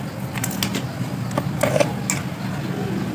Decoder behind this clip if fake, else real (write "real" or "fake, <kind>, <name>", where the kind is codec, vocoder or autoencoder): real